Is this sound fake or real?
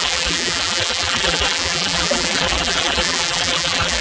fake